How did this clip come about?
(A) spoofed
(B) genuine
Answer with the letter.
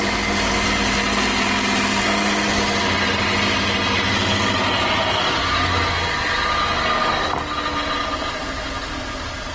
B